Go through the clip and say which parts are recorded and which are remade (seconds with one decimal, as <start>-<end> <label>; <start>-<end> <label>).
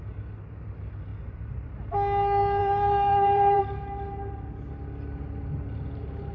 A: 0.0-1.1 recorded; 1.1-1.9 remade; 1.9-2.6 recorded; 2.6-3.6 remade; 3.6-5.4 recorded; 5.4-6.3 remade